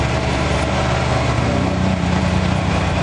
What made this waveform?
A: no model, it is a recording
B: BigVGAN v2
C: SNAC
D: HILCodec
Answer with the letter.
B